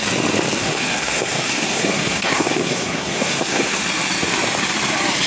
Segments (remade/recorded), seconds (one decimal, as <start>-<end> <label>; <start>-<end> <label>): 0.0-0.6 recorded; 0.6-3.8 remade; 3.8-5.3 recorded